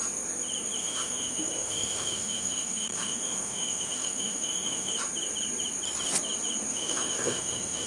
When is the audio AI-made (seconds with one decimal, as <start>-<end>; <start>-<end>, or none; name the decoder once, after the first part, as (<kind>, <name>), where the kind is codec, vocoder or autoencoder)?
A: 0.8-4.9 (autoencoder, DAC-VAE); 6.7-7.9